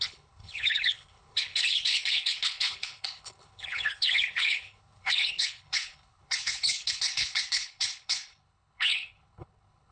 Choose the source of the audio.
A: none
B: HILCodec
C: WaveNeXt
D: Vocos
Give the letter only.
B